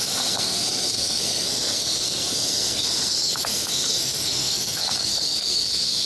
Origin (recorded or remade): remade